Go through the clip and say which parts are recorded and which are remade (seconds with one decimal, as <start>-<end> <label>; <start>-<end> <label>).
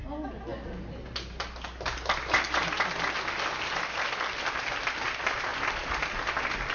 0.0-6.7 recorded